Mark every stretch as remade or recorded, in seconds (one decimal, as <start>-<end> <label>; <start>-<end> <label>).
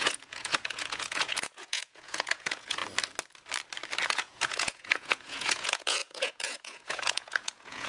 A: 0.0-2.8 remade; 2.8-4.1 recorded; 4.1-7.9 remade